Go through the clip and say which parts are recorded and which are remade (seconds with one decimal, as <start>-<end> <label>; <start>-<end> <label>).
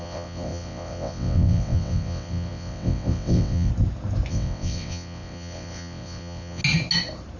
0.0-3.7 remade; 3.7-4.3 recorded; 4.3-6.6 remade; 6.6-7.4 recorded